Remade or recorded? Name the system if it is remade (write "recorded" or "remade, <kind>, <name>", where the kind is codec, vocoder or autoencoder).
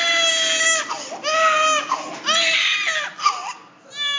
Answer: recorded